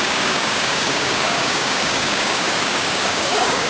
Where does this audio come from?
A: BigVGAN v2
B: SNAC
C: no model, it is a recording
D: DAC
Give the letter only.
D